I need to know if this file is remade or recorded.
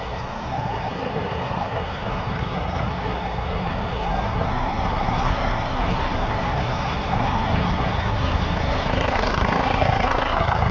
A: remade